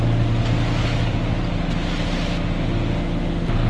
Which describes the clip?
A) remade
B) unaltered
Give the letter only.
B